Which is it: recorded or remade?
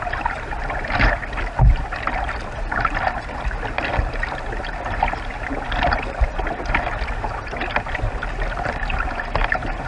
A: recorded